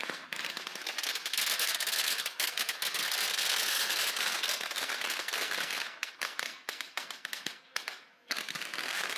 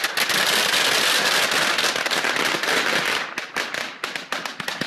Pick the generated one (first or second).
first